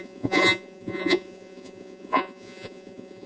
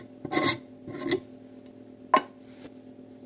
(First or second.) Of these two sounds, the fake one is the first